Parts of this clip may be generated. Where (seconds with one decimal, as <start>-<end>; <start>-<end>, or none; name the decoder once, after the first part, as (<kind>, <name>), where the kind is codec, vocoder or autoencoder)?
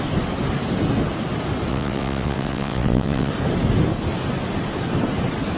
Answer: 1.7-3.3 (vocoder, WaveNeXt)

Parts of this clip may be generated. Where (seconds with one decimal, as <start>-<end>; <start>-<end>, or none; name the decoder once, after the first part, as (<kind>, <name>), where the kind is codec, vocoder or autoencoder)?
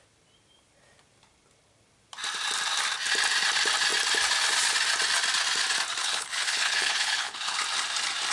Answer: 6.0-7.6 (codec, HILCodec)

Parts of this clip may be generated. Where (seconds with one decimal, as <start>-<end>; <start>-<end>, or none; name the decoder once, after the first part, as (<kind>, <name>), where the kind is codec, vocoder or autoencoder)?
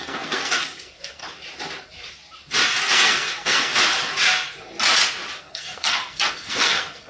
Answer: 0.0-1.2 (codec, SNAC); 2.8-3.7; 5.4-7.1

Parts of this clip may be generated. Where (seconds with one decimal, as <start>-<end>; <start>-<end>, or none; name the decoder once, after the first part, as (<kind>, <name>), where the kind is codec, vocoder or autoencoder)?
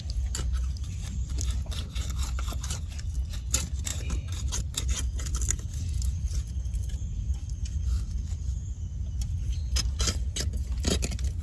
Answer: 3.9-4.6 (vocoder, BigVGAN v2)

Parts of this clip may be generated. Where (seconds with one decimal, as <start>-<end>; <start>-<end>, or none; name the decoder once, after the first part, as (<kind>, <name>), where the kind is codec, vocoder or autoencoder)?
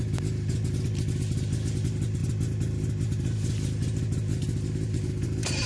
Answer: none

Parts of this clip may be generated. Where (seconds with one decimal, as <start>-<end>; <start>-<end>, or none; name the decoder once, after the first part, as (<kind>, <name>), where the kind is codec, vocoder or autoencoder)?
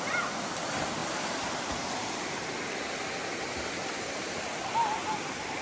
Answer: none